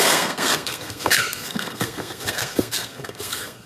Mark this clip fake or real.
fake